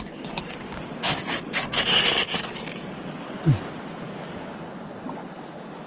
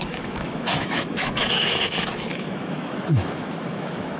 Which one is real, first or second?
first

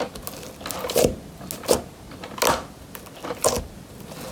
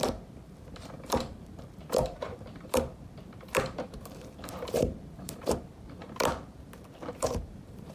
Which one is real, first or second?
first